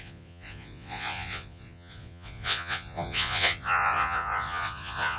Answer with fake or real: fake